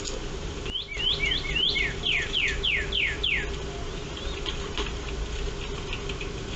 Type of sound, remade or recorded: recorded